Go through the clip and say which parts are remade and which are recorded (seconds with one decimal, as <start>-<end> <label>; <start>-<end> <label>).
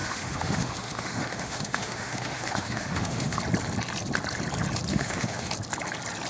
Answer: 0.0-3.4 remade; 3.4-4.9 recorded; 4.9-5.5 remade; 5.5-6.3 recorded